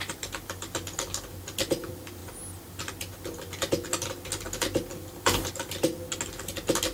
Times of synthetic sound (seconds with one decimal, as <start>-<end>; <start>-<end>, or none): none